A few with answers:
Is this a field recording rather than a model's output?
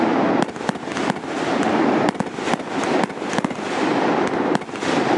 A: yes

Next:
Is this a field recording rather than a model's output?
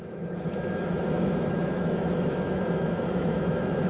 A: no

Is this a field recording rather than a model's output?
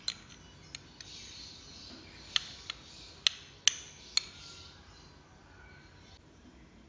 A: yes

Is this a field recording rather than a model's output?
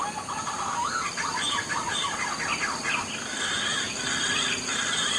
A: yes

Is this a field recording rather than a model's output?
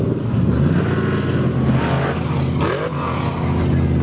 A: yes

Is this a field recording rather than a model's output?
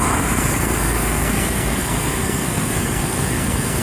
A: no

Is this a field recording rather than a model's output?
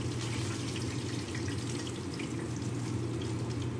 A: yes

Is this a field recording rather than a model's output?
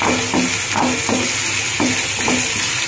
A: yes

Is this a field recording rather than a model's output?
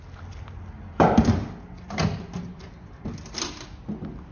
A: yes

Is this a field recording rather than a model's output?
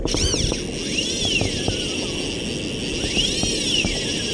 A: yes